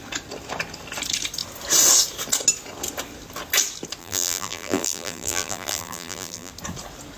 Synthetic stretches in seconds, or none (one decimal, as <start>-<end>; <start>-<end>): 4.0-6.5